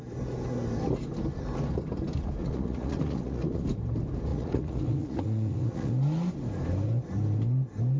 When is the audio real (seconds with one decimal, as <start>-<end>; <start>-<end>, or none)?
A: 0.0-2.4; 3.6-4.3; 5.9-8.0